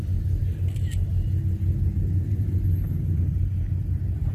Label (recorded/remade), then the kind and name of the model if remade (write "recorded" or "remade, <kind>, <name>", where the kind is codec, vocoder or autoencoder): recorded